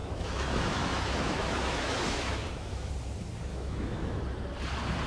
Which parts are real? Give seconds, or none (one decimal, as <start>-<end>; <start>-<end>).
2.9-3.5; 4.2-5.1